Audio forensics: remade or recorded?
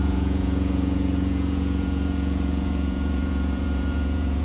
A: remade